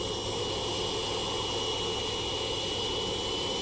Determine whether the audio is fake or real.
real